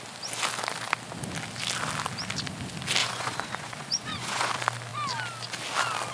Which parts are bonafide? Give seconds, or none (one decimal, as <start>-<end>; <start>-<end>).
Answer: 0.0-3.0; 4.5-6.1